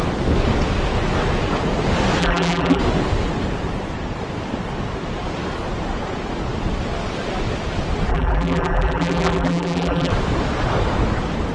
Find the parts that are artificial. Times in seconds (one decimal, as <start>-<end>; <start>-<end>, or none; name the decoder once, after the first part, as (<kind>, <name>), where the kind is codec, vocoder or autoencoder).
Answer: 2.2-2.8 (vocoder, BigVGAN v2); 8.1-10.1